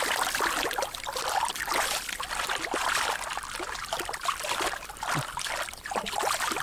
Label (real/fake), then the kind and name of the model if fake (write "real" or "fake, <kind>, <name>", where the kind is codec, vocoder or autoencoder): real